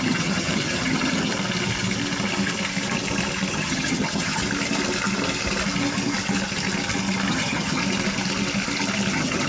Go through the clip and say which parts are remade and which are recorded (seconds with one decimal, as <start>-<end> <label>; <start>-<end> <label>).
0.0-1.3 remade; 1.3-3.5 recorded; 3.5-4.4 remade; 4.4-7.3 recorded; 7.3-7.8 remade; 7.8-9.1 recorded; 9.1-9.5 remade